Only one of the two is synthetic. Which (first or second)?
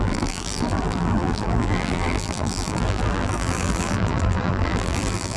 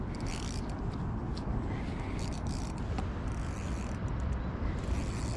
first